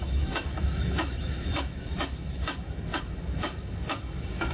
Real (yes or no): no